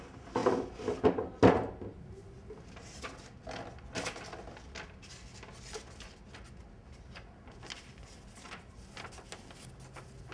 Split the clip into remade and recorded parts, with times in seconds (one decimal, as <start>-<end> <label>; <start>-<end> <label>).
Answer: 0.0-10.3 recorded